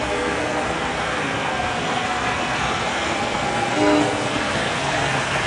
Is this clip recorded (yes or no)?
no